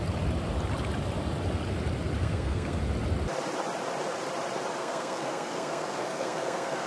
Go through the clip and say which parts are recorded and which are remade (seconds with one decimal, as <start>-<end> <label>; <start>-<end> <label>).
0.0-2.2 recorded; 2.2-2.8 remade; 2.8-4.8 recorded; 4.8-6.9 remade